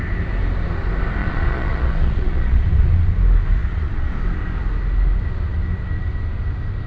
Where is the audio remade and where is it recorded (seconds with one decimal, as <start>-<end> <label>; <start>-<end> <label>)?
0.0-1.2 recorded; 1.2-3.1 remade; 3.1-3.6 recorded; 3.6-4.1 remade; 4.1-6.9 recorded